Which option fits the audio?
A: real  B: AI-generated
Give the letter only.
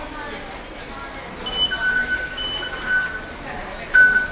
A